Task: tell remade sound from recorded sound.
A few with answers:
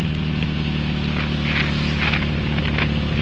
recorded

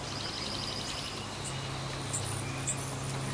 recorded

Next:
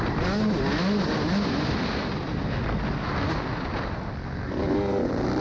recorded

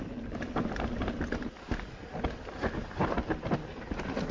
recorded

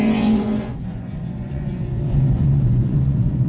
remade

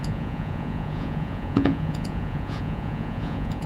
remade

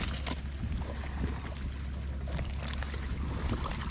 recorded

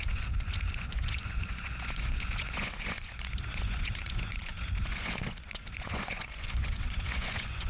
remade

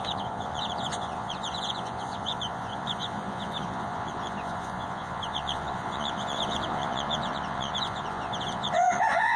remade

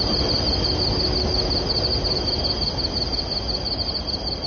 recorded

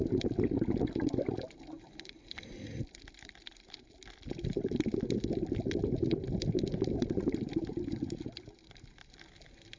recorded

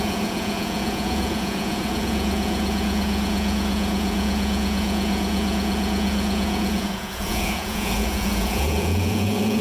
remade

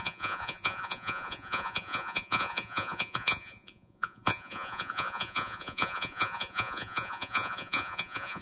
remade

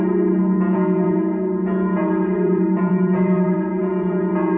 remade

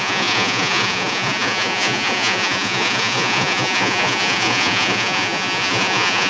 remade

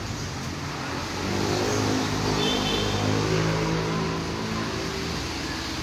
recorded